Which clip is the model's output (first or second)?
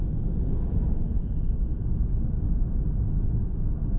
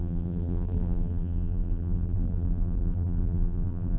second